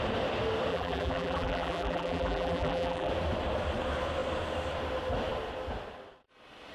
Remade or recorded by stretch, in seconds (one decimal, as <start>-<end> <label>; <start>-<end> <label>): 0.0-0.7 recorded; 0.7-3.1 remade; 3.1-6.7 recorded